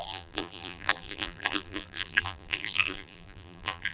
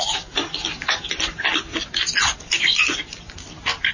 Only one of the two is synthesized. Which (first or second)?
first